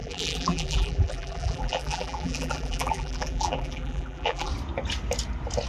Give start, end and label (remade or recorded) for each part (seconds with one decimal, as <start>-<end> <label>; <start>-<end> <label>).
0.0-4.5 remade; 4.5-5.7 recorded